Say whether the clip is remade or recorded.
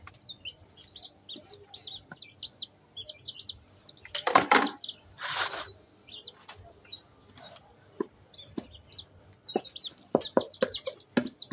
recorded